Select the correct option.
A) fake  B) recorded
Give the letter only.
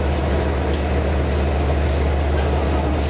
B